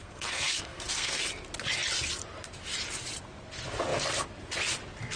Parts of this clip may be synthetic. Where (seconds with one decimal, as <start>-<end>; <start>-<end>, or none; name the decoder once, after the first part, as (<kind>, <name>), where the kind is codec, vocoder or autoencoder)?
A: 0.0-1.2 (codec, SNAC)